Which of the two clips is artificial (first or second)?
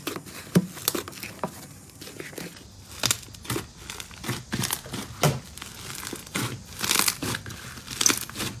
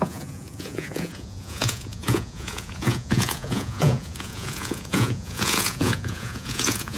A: second